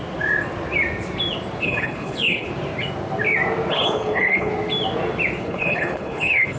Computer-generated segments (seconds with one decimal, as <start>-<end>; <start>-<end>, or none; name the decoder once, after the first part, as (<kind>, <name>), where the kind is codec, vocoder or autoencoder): 1.6-2.5 (codec, HILCodec); 3.7-4.5; 5.4-6.6